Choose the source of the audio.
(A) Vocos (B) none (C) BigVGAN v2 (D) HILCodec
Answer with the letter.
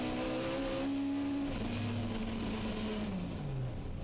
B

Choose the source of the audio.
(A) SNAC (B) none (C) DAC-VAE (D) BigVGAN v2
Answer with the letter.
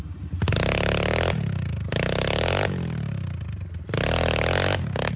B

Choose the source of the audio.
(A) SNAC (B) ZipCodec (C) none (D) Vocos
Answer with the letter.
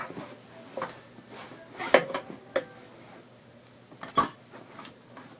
C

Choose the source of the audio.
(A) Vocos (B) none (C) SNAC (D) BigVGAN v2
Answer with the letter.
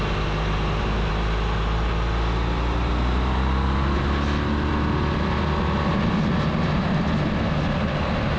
B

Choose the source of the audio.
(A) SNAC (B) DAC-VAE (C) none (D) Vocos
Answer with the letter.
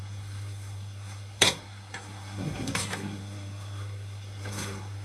A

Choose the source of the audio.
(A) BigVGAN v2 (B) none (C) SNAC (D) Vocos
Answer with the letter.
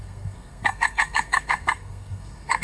C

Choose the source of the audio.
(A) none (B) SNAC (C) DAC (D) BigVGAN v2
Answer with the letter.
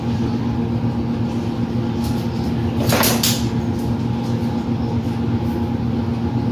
A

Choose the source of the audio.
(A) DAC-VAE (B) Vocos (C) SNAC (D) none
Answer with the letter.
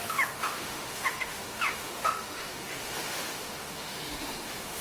A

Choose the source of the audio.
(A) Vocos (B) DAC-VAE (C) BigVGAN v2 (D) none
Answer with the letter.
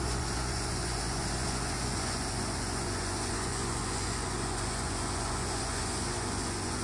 A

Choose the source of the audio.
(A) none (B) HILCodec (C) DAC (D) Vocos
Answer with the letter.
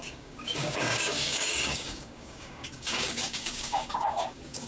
C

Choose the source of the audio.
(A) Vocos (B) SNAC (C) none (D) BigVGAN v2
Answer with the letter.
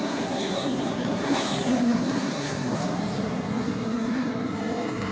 B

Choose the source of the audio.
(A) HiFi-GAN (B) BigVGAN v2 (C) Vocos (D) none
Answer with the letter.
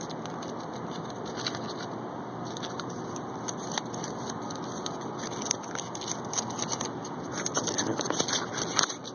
D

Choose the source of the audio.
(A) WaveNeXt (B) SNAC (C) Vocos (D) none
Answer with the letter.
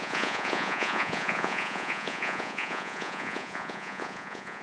C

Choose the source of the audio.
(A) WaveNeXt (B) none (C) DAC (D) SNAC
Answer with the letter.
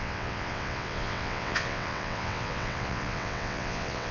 A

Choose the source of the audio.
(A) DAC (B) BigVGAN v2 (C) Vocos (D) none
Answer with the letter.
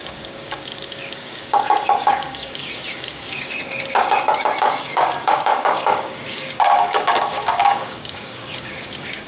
A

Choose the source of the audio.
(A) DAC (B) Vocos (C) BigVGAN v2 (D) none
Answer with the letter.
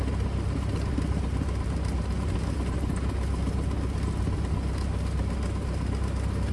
D